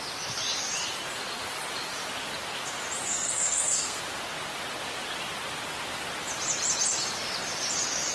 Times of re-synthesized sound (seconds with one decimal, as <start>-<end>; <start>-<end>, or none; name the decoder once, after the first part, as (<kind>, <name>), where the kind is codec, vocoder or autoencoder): 3.1-4.0 (codec, SNAC)